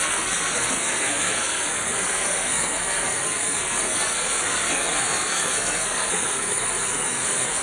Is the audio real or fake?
fake